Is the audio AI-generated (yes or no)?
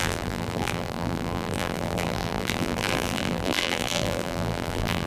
yes